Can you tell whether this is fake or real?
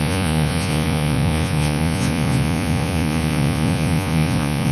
fake